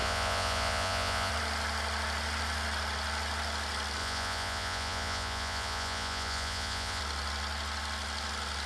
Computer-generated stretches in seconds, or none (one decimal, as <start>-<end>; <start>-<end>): 0.0-1.3; 4.0-7.0